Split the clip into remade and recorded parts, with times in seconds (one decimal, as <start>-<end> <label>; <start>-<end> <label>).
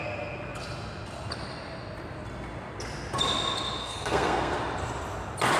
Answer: 0.0-3.8 recorded; 3.8-4.6 remade; 4.6-5.6 recorded